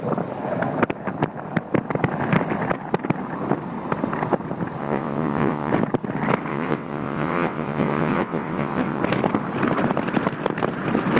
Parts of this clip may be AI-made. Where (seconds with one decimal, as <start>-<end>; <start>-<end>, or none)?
4.8-5.7; 6.5-9.0